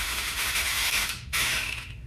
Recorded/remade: remade